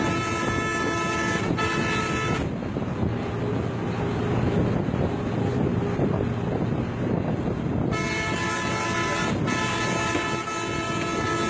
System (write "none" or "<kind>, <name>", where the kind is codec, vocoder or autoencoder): none